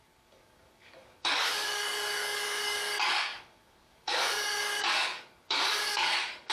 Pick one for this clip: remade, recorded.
remade